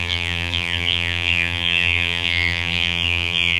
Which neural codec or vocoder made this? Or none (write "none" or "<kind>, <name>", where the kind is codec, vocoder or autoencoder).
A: vocoder, BigVGAN v2